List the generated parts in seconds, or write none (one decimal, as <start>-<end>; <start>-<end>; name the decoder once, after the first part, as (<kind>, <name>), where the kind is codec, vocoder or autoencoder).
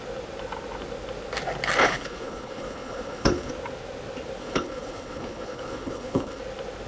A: 1.8-3.5 (codec, HILCodec); 4.4-6.4